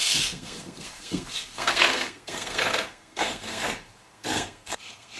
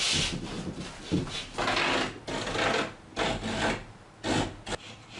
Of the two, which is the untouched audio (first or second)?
second